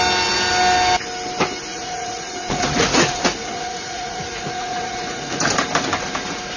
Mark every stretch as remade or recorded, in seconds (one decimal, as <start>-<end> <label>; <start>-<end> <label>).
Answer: 0.0-1.7 recorded; 1.7-5.4 remade; 5.4-6.6 recorded